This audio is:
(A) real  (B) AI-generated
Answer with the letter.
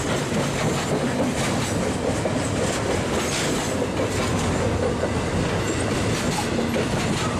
A